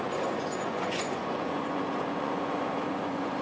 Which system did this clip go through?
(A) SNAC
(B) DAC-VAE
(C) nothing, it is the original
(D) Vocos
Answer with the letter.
D